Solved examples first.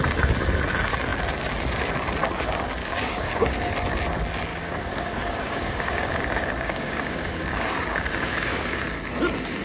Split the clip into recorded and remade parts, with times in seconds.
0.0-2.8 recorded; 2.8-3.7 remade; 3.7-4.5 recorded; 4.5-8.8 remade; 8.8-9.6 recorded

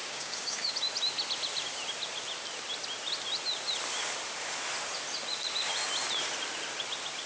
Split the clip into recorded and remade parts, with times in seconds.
0.0-0.7 remade; 0.7-7.3 recorded

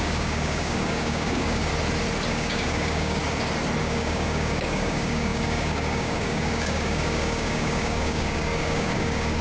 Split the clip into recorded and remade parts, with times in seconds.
0.0-1.7 remade; 1.7-2.3 recorded; 2.3-3.2 remade; 3.2-3.8 recorded; 3.8-9.4 remade

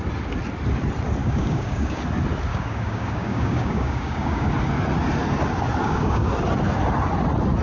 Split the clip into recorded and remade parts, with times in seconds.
0.0-1.2 recorded; 1.2-2.0 remade; 2.0-2.5 recorded; 2.5-4.5 remade; 4.5-5.8 recorded; 5.8-6.3 remade; 6.3-7.6 recorded

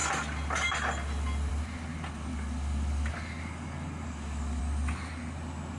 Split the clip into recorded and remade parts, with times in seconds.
0.0-2.3 recorded; 2.3-4.6 remade; 4.6-5.8 recorded